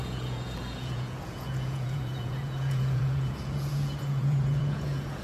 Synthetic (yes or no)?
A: yes